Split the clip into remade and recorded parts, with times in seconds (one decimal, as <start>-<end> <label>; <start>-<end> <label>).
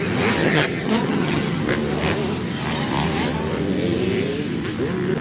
0.0-0.4 recorded; 0.4-1.6 remade; 1.6-5.2 recorded